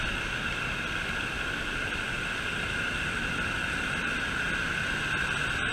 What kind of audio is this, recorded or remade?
recorded